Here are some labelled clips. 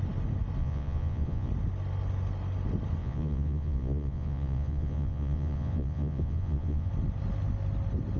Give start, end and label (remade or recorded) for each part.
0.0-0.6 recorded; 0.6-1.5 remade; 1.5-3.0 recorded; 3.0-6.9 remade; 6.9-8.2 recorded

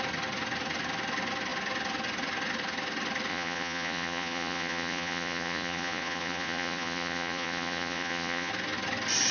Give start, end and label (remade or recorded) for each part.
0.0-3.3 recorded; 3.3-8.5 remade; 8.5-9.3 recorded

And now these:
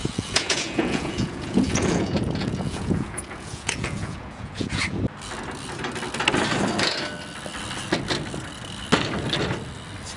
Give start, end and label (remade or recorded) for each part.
0.0-5.0 remade; 5.0-10.2 recorded